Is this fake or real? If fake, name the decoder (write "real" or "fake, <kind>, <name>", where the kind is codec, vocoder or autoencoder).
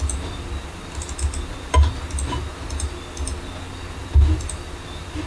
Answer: real